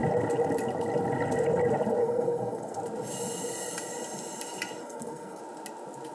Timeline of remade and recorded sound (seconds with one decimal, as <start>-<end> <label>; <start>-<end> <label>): 0.0-2.0 recorded; 2.0-2.8 remade; 2.8-4.8 recorded; 4.8-5.4 remade; 5.4-6.1 recorded